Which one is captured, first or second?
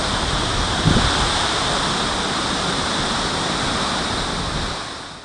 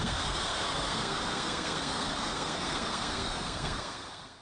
first